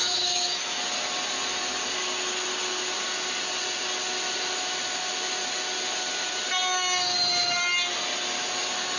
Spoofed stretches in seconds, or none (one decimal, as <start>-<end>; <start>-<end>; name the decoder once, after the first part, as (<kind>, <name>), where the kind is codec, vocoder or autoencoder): 0.0-0.8 (autoencoder, DAC-VAE)